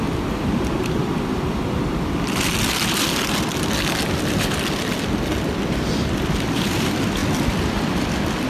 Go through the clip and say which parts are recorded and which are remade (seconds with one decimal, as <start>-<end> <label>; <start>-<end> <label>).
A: 0.0-8.5 recorded

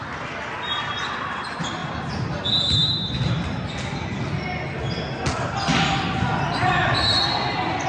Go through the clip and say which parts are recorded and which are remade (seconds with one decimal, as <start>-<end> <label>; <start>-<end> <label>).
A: 0.0-1.8 remade; 1.8-5.3 recorded; 5.3-5.7 remade; 5.7-6.3 recorded; 6.3-7.9 remade

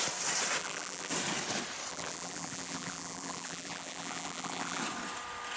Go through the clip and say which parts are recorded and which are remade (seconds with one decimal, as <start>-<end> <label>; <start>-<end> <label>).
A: 0.0-0.6 recorded; 0.6-1.1 remade; 1.1-1.9 recorded; 1.9-4.8 remade; 4.8-5.6 recorded

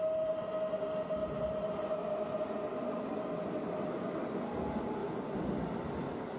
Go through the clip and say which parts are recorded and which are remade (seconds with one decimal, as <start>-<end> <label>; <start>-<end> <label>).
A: 0.0-6.4 recorded

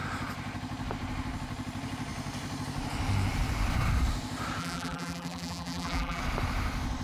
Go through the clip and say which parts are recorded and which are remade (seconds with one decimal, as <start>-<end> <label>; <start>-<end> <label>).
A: 0.0-4.6 recorded; 4.6-6.2 remade; 6.2-7.0 recorded

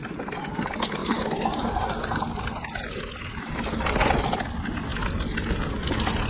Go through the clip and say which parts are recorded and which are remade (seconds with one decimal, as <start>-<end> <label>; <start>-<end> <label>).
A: 0.0-1.0 recorded; 1.0-1.9 remade; 1.9-6.3 recorded